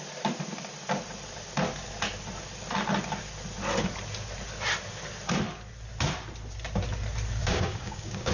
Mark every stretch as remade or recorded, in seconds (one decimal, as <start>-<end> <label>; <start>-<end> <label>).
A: 0.0-7.4 recorded; 7.4-8.3 remade